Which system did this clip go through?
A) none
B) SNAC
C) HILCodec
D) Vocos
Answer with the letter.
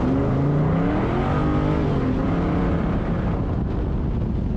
A